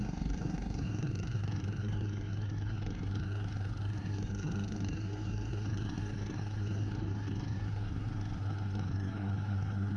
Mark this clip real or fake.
fake